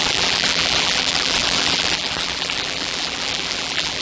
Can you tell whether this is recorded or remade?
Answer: remade